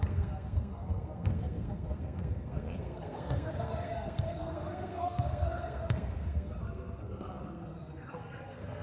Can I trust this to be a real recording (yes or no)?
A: no